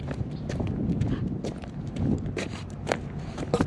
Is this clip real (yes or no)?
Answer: yes